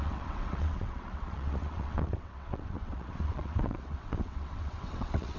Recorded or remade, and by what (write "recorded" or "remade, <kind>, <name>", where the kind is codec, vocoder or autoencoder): remade, vocoder, WaveNeXt